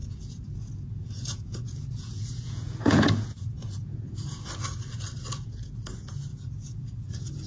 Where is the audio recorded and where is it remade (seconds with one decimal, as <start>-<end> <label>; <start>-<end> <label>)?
0.0-4.5 remade; 4.5-6.3 recorded; 6.3-7.5 remade